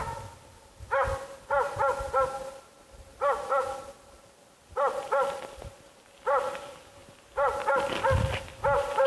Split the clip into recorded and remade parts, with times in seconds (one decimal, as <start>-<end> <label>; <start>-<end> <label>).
0.0-9.1 recorded